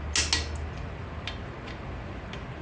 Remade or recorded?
recorded